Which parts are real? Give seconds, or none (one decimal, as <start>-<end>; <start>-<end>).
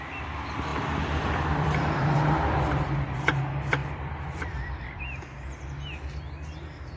0.0-0.7; 3.4-3.8; 5.0-7.0